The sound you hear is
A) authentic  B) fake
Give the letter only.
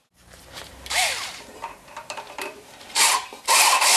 B